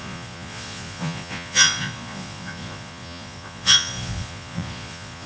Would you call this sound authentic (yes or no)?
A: no